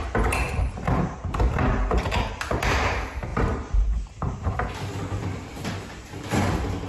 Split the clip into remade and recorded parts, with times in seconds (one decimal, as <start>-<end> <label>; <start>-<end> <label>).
0.0-0.4 recorded; 0.4-1.1 remade; 1.1-3.3 recorded; 3.3-4.5 remade; 4.5-6.9 recorded